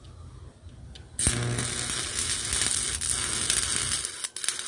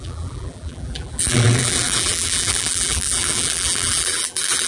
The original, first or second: first